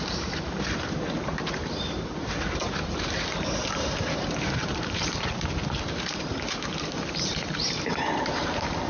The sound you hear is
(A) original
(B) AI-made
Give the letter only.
B